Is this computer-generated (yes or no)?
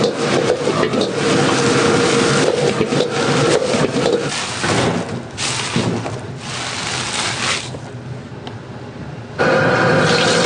no